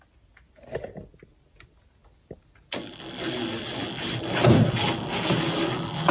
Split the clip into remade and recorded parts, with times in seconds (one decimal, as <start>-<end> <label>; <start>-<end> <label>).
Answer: 0.0-6.1 recorded